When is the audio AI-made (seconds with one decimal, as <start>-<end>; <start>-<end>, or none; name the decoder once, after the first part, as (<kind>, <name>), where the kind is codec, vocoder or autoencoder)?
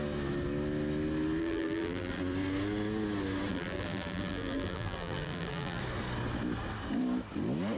1.4-2.2 (vocoder, BigVGAN v2); 3.5-5.8